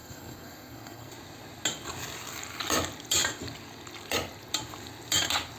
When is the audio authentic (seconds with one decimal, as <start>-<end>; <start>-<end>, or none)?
1.1-5.6